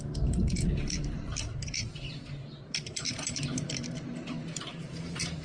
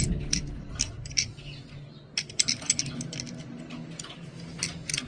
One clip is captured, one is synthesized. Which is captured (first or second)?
second